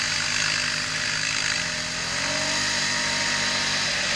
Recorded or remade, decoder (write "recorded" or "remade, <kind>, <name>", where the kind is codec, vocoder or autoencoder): recorded